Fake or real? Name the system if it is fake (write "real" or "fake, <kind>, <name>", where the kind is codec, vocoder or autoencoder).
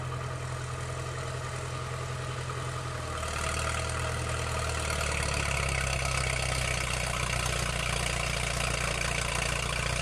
real